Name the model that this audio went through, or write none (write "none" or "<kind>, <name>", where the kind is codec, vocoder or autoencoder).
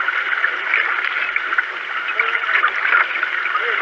none